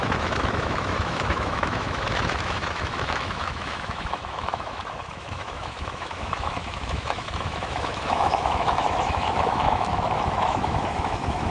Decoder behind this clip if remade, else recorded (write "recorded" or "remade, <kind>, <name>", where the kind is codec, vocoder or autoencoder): remade, autoencoder, DAC-VAE